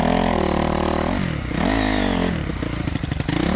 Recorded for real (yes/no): yes